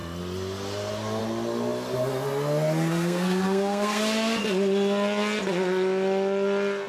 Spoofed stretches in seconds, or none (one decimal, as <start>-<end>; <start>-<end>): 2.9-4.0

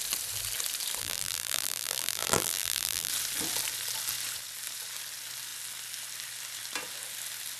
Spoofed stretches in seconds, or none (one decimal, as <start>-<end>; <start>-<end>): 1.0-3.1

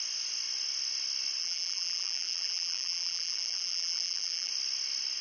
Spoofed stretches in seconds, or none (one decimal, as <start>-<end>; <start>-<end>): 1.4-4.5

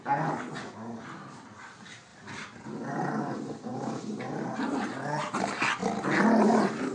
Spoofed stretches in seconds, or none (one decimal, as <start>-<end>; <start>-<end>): none

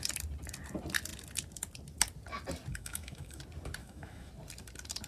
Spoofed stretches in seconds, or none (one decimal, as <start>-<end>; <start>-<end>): 2.7-3.4; 3.8-4.3